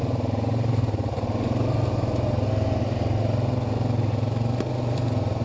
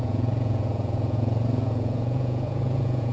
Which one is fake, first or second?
second